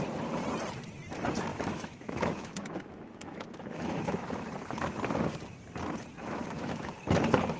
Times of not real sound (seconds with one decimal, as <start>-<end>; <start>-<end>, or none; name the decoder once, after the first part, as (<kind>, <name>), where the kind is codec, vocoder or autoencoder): 1.5-4.3 (autoencoder, DAC-VAE); 6.2-6.9